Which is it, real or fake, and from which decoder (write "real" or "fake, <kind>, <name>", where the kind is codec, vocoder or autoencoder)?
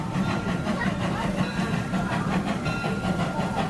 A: fake, vocoder, BigVGAN v2